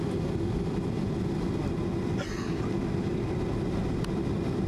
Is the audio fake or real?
real